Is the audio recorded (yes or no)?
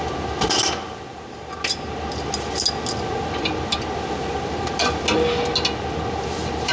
yes